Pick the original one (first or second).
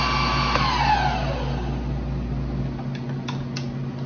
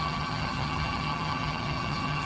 first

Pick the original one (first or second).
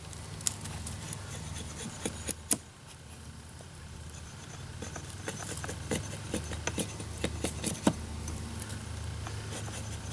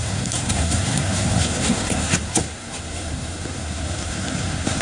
first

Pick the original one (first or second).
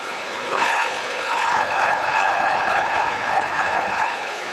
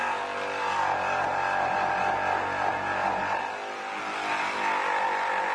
second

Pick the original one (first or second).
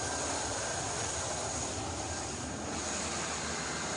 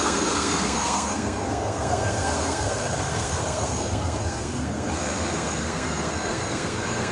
first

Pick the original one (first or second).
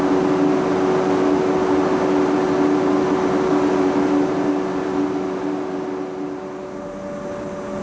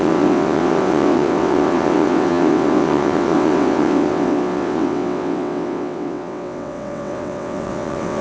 first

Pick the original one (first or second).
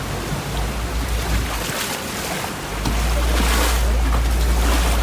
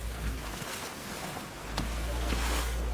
first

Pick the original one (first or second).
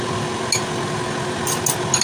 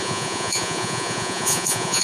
first